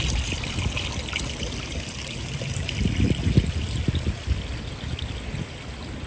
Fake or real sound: real